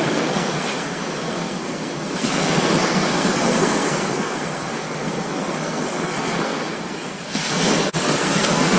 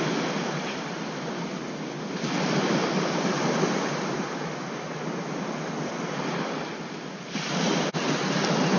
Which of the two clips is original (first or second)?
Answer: second